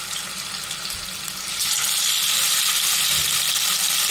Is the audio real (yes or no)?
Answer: yes